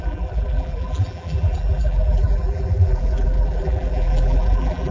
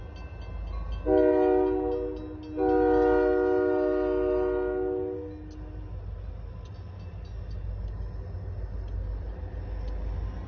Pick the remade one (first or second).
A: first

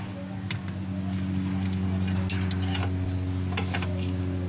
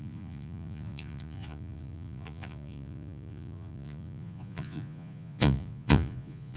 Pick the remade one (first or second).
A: second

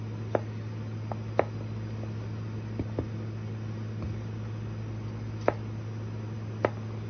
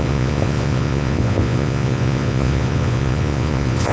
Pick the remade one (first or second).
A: second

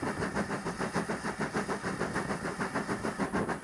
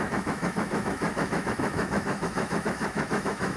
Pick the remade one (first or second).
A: second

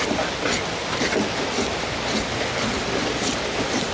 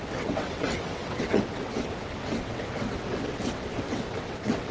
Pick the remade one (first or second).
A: second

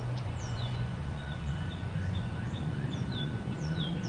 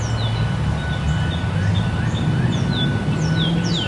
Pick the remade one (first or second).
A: first